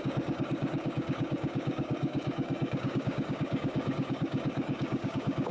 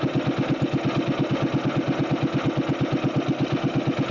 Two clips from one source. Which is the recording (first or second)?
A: second